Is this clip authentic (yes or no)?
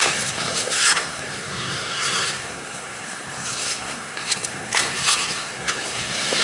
no